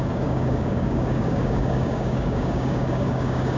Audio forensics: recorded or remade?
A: remade